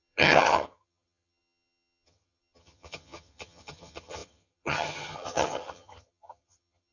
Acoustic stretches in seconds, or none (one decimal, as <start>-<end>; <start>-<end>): none